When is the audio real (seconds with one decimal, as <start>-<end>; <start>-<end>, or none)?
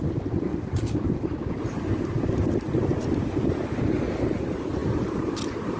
0.0-5.8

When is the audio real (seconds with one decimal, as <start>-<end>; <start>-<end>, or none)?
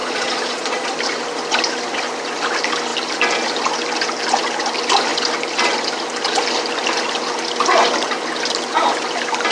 0.9-9.5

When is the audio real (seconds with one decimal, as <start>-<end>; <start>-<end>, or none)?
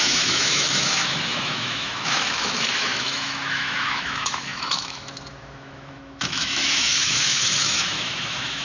none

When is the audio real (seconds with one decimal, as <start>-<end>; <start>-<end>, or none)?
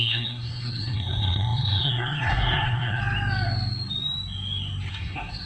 3.0-4.9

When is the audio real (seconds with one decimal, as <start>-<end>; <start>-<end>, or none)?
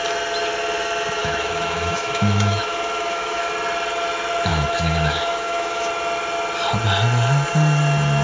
0.0-1.2; 3.5-4.5; 5.9-8.2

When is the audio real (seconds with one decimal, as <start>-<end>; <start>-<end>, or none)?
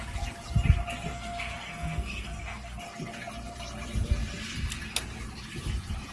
0.0-1.1; 2.8-6.1